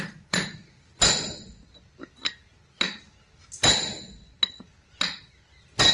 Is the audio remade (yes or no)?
no